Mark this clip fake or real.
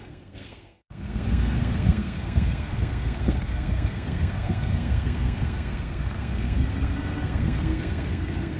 fake